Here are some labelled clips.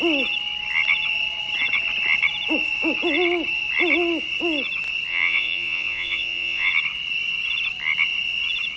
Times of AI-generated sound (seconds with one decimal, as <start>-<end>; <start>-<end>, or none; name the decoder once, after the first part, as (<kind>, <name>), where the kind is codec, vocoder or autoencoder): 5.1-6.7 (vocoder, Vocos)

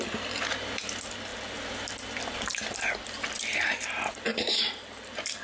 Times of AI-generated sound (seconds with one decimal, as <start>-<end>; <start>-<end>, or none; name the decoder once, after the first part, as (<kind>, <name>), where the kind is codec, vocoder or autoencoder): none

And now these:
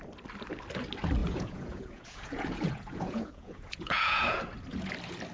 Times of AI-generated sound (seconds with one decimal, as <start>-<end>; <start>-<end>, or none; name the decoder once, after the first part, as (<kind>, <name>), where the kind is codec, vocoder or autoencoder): 1.2-4.4 (vocoder, Vocos)

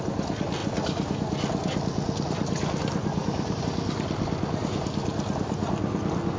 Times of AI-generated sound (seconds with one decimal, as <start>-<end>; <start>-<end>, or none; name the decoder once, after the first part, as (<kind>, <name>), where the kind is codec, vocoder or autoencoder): none

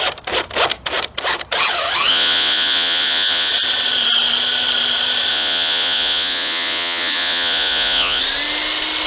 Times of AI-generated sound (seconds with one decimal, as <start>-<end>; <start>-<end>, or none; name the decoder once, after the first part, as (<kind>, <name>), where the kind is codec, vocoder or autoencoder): 2.1-3.5 (vocoder, Vocos); 5.3-8.2

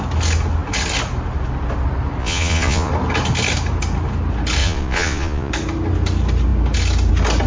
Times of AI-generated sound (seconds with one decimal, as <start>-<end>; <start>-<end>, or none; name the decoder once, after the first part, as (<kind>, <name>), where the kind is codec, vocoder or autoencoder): 2.2-2.9 (vocoder, Vocos); 4.6-5.5

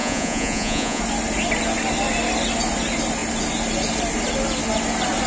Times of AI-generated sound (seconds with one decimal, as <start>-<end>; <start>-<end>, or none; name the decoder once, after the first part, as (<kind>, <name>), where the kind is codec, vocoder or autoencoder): 0.0-1.0 (vocoder, Vocos)

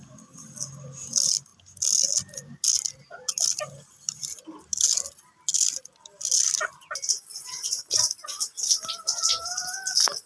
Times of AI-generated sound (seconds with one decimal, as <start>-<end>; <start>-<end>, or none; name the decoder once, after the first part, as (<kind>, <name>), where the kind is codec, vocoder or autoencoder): none